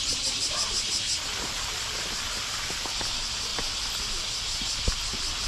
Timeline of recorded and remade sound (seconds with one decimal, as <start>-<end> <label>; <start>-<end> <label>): 0.0-3.5 remade; 3.5-4.1 recorded; 4.1-5.5 remade